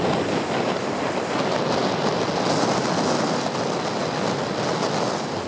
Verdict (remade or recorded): recorded